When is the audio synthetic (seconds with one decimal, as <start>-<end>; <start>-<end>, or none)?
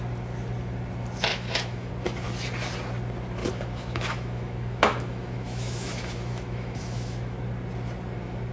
1.3-1.9; 3.4-7.4